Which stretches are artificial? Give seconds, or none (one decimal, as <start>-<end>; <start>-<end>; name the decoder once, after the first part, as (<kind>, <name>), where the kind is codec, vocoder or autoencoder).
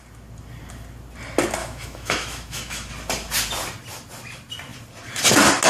1.6-2.9 (autoencoder, DAC-VAE)